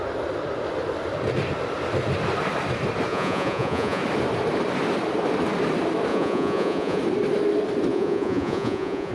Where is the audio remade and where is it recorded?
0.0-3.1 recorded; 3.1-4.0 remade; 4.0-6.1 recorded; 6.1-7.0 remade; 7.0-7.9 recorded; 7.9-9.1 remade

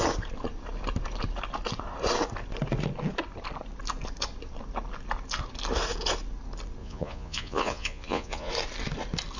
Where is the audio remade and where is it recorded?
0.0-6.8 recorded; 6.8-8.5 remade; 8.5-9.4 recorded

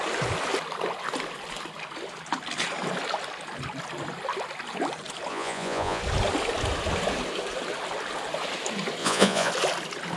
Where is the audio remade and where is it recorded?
0.0-5.3 recorded; 5.3-6.0 remade; 6.0-9.0 recorded; 9.0-9.5 remade; 9.5-10.2 recorded